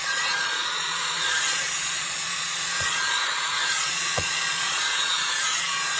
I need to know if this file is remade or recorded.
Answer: remade